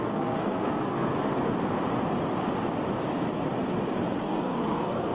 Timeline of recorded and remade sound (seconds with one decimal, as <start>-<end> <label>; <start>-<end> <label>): 0.0-1.1 remade; 1.1-4.2 recorded; 4.2-5.1 remade